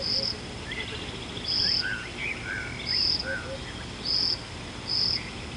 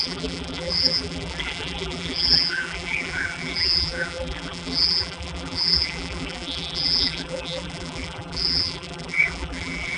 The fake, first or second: second